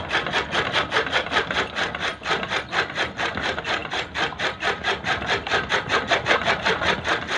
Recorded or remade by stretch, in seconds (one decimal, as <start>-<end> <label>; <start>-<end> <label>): 0.0-3.8 recorded; 3.8-5.7 remade; 5.7-7.4 recorded